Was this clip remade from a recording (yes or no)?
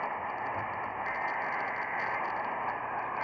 no